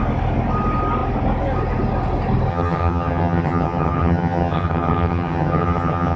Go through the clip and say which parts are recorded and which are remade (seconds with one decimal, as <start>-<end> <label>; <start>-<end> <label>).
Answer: 0.0-2.5 recorded; 2.5-6.2 remade